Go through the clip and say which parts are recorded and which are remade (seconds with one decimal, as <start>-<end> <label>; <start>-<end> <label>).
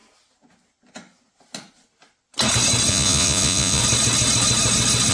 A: 0.0-2.9 recorded; 2.9-3.8 remade; 3.8-5.1 recorded